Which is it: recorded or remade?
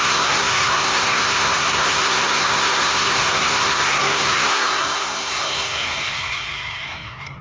remade